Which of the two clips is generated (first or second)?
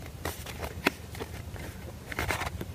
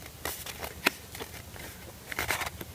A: first